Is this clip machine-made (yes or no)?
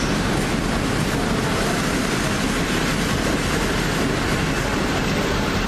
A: no